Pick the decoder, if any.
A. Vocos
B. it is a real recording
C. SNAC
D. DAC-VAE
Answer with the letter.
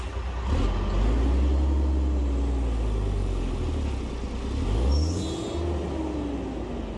B